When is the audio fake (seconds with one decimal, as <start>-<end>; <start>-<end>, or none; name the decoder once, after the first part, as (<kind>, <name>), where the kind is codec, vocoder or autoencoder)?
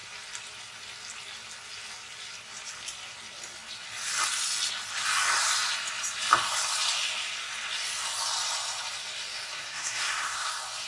9.5-10.5 (codec, SNAC)